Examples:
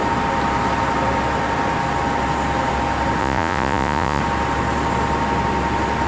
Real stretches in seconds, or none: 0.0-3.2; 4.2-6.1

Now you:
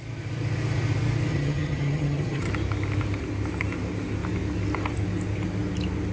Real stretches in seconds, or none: 0.0-1.3; 2.5-6.1